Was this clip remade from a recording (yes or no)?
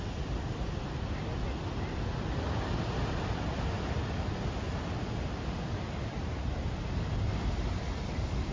no